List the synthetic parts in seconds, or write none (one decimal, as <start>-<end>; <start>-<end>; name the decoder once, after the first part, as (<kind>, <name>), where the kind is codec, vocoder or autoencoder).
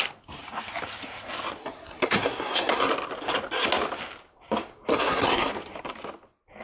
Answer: 1.6-2.9 (codec, SNAC); 4.9-5.5